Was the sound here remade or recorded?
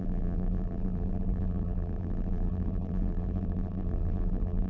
remade